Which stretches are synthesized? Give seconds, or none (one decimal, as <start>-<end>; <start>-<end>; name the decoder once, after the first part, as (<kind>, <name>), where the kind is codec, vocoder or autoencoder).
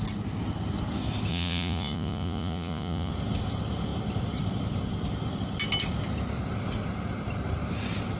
1.3-3.1 (vocoder, Vocos)